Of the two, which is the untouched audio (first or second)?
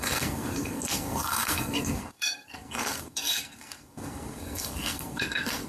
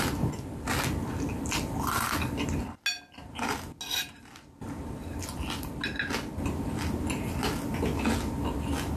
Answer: second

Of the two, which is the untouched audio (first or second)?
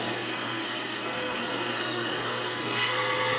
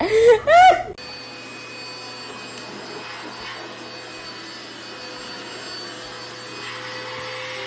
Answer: second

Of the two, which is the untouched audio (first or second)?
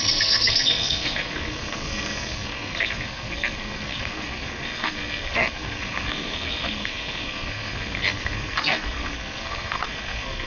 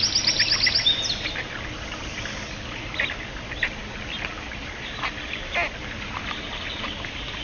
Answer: second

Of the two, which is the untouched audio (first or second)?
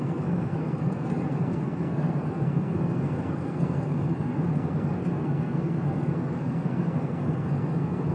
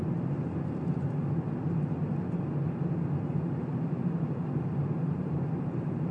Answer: second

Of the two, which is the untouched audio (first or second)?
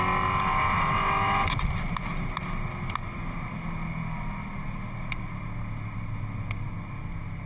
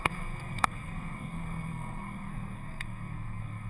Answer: first